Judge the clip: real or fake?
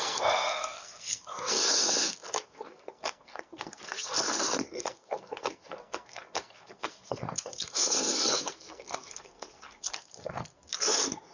fake